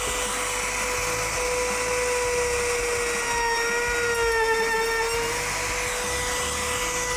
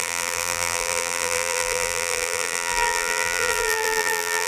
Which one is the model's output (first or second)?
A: second